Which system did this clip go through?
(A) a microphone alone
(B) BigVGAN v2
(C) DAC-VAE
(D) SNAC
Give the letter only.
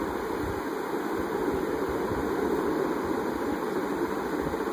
A